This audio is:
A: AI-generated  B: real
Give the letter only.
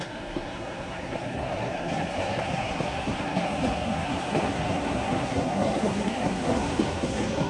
A